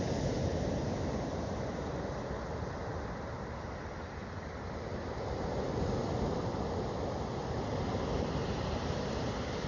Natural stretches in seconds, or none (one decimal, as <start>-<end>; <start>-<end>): 0.0-8.4; 9.2-9.7